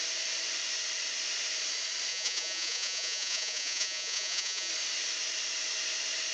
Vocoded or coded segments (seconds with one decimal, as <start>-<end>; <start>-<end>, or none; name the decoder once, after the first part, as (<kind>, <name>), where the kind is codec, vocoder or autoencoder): 2.1-4.7 (vocoder, Vocos)